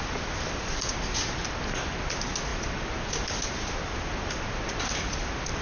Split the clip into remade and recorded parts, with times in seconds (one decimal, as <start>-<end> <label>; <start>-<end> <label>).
0.0-5.6 recorded